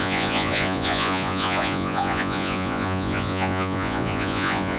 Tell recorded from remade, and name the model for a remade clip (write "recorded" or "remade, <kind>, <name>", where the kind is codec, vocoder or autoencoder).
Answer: remade, vocoder, Vocos